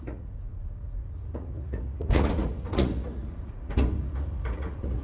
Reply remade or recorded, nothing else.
remade